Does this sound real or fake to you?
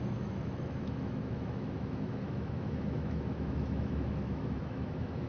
fake